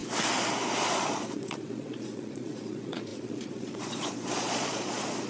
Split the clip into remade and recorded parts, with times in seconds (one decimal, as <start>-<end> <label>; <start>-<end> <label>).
0.0-0.8 recorded; 0.8-5.3 remade

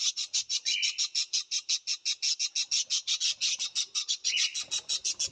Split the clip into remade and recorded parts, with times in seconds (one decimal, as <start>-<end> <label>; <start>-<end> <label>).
0.0-0.7 remade; 0.7-3.9 recorded; 3.9-4.5 remade; 4.5-5.3 recorded

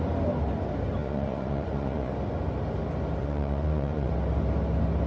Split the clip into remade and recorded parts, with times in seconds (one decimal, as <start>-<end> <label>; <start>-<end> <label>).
0.0-1.0 recorded; 1.0-2.1 remade; 2.1-3.2 recorded; 3.2-4.1 remade; 4.1-5.1 recorded